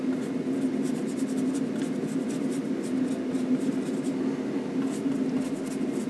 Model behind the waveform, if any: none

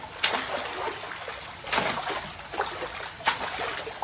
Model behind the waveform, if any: none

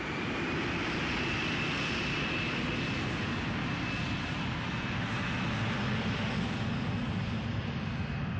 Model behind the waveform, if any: none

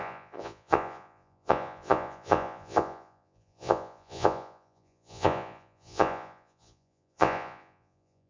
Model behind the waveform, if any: vocoder, Vocos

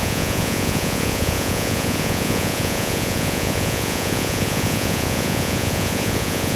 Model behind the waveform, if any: vocoder, Vocos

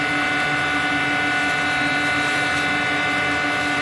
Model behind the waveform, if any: none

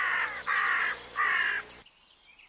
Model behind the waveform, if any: none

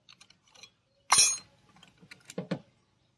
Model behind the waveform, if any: none